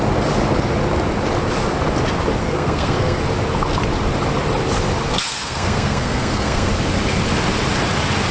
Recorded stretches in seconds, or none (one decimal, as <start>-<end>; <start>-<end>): 0.0-2.4; 3.2-5.1; 6.7-8.3

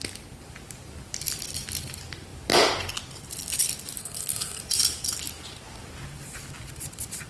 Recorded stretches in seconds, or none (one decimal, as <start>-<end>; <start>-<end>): 0.0-4.0; 4.6-7.3

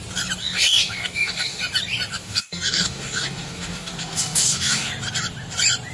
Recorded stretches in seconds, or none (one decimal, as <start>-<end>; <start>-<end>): 0.0-0.4; 1.6-2.1; 4.9-5.9

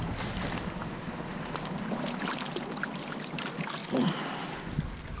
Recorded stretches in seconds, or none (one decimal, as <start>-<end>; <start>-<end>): 0.0-5.2

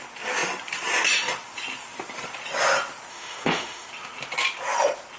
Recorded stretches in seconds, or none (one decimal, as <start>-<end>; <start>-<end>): 0.0-3.1; 3.9-5.2